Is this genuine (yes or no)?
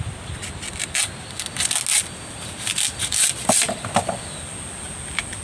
yes